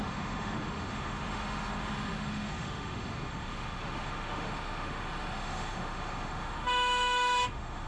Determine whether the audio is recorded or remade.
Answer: remade